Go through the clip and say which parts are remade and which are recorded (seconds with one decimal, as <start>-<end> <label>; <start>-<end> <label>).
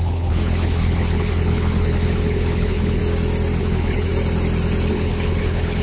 0.0-3.0 remade; 3.0-3.6 recorded; 3.6-4.1 remade; 4.1-4.9 recorded; 4.9-5.8 remade